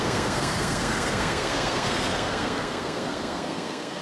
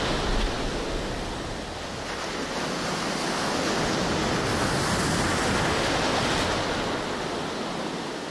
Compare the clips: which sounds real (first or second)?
second